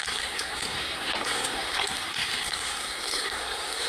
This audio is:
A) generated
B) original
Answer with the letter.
A